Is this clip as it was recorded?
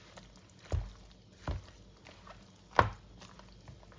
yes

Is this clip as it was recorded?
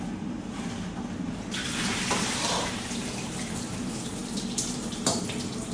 no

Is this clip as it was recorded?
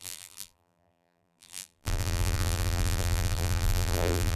no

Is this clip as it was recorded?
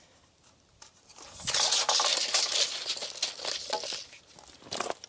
yes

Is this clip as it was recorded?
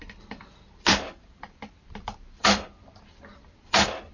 no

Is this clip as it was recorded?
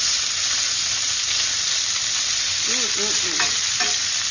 yes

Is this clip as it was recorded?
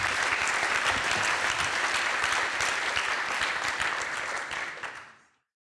no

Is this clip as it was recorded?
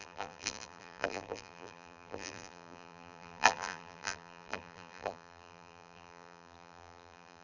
no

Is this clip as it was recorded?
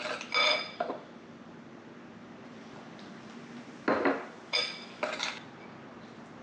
yes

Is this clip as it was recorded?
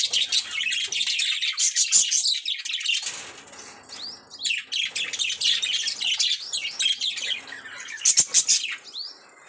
yes